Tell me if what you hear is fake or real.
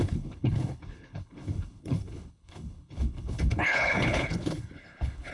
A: fake